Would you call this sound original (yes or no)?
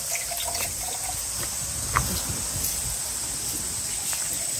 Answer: yes